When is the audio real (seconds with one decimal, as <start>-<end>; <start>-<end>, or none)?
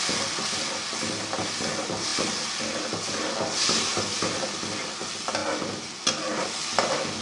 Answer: 0.0-7.2